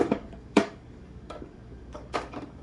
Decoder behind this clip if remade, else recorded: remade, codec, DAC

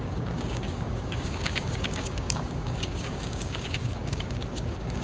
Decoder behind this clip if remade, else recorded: remade, codec, DAC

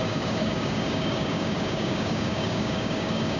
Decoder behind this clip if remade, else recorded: remade, codec, DAC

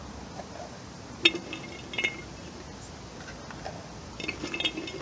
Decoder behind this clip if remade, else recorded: recorded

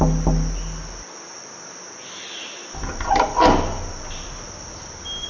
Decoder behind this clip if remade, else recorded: recorded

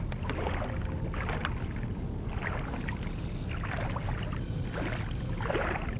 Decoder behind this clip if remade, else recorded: recorded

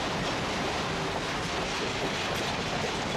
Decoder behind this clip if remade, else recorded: recorded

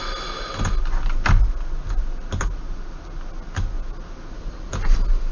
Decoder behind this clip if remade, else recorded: recorded